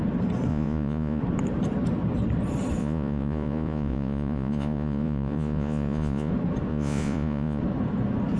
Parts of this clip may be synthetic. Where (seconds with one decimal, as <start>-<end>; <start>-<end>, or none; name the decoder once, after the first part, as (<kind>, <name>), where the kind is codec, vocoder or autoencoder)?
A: 0.5-1.2 (vocoder, Vocos); 2.8-6.3; 6.7-7.6